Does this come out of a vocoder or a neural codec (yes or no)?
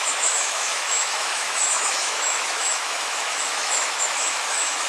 yes